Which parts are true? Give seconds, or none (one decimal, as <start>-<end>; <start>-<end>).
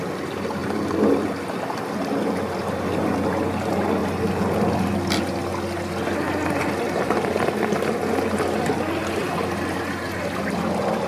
0.0-11.1